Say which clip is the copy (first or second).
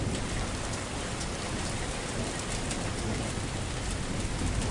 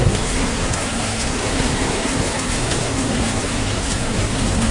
second